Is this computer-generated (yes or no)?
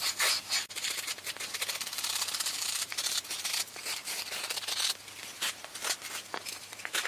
yes